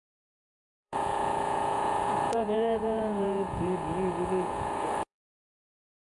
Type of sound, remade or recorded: remade